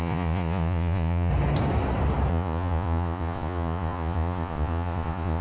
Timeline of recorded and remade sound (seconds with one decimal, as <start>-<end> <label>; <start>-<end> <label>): 0.0-1.3 remade; 1.3-2.3 recorded; 2.3-5.4 remade